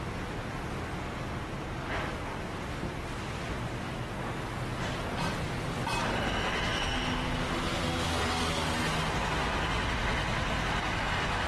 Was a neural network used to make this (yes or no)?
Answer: no